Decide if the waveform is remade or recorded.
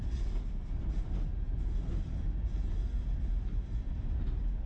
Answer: recorded